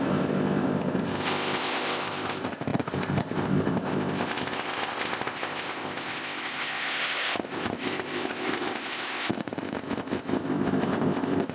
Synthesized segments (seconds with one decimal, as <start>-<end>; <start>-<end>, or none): 0.0-11.5

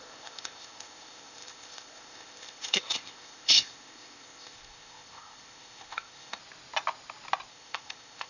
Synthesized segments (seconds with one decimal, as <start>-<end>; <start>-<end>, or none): 0.0-6.4; 7.5-8.3

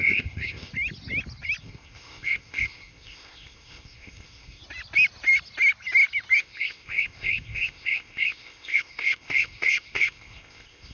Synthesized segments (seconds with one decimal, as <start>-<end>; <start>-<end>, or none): 0.0-0.7; 1.6-4.6; 6.4-10.9

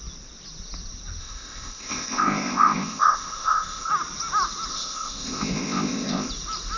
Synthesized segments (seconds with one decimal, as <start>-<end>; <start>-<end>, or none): 1.2-3.9; 4.7-6.3

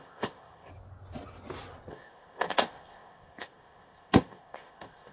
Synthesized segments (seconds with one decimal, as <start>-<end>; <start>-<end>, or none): 0.0-0.7; 1.9-5.1

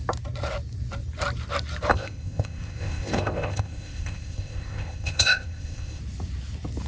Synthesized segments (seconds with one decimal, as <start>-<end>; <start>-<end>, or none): 1.9-6.0